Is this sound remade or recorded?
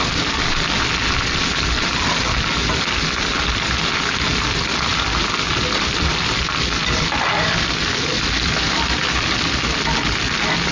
recorded